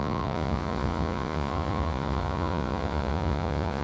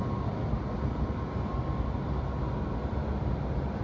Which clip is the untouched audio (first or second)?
second